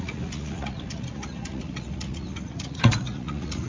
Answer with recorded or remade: remade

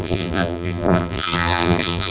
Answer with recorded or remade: remade